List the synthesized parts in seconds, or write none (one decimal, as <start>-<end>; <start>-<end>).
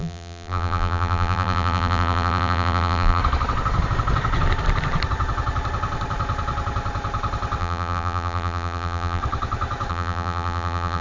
0.0-3.2; 7.6-9.2; 9.9-11.0